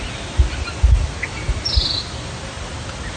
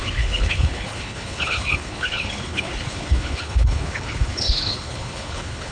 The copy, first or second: second